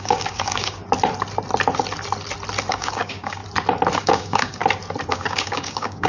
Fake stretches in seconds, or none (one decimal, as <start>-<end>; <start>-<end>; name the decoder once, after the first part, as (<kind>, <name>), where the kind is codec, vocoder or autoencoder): 0.0-0.8 (codec, DAC); 2.7-3.4; 4.0-4.6; 5.1-6.1